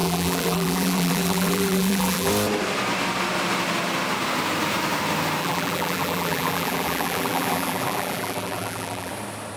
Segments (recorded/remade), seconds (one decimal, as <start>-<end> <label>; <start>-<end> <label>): 0.0-2.3 remade; 2.3-5.4 recorded; 5.4-9.1 remade; 9.1-9.6 recorded